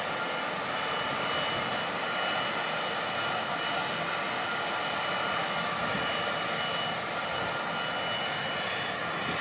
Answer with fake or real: real